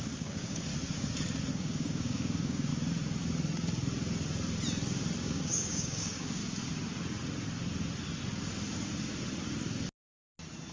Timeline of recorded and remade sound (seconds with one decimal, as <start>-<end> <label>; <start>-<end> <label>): 0.0-0.7 remade; 0.7-1.5 recorded; 1.5-2.7 remade; 2.7-5.2 recorded; 5.2-6.4 remade; 6.4-10.7 recorded